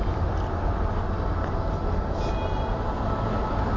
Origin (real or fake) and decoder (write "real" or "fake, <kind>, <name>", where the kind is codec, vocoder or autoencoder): real